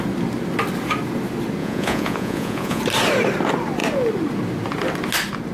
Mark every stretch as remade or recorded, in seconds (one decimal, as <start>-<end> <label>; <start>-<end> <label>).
0.0-1.6 recorded; 1.6-2.8 remade; 2.8-5.5 recorded